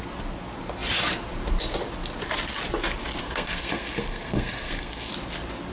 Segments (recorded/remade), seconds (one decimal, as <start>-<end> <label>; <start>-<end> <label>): 0.0-3.2 recorded; 3.2-5.1 remade; 5.1-5.7 recorded